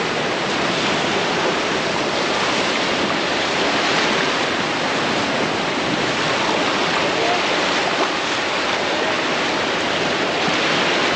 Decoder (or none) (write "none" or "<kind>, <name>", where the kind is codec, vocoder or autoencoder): none